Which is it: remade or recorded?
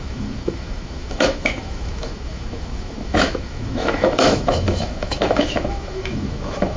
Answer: remade